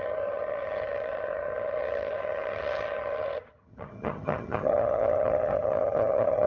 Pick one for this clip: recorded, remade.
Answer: remade